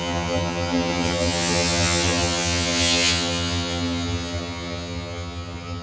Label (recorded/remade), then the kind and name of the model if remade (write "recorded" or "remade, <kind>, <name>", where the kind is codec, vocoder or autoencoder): remade, vocoder, HiFi-GAN